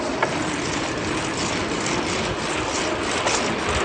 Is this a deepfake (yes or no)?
no